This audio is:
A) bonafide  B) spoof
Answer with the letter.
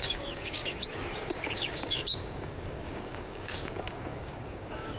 B